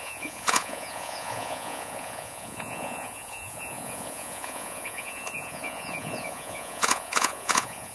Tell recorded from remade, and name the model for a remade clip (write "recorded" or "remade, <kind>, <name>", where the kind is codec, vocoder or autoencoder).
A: remade, vocoder, Vocos